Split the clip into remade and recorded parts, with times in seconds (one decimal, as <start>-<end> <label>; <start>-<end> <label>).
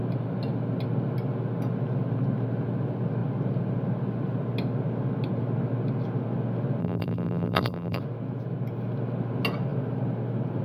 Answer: 0.0-6.8 recorded; 6.8-8.0 remade; 8.0-10.6 recorded